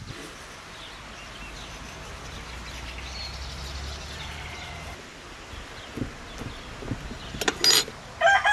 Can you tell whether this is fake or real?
real